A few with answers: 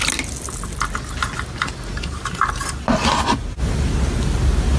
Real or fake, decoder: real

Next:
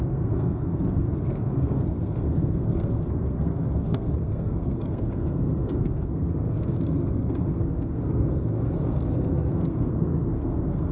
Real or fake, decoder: fake, codec, SNAC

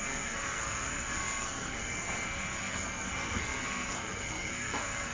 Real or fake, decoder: fake, codec, SNAC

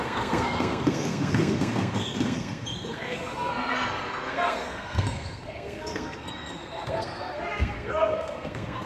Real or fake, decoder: fake, codec, SNAC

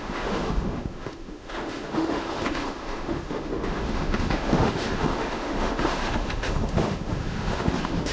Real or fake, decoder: fake, autoencoder, DAC-VAE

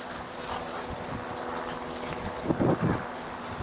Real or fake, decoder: real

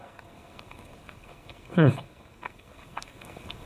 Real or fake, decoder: fake, codec, SNAC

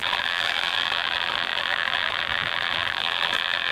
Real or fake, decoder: fake, vocoder, BigVGAN v2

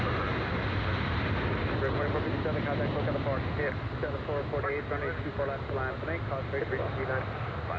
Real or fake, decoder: real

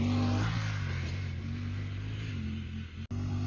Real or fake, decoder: real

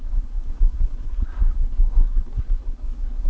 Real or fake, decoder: fake, codec, SNAC